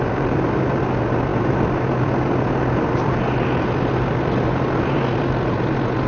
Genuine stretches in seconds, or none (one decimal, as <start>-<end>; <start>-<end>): 0.0-6.1